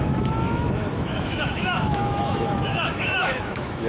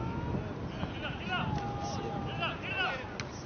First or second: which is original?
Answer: second